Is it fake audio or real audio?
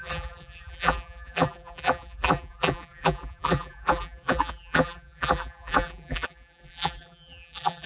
fake